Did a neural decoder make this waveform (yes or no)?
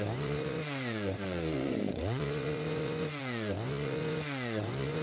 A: yes